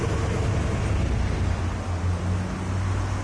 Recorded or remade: recorded